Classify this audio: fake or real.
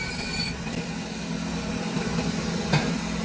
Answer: real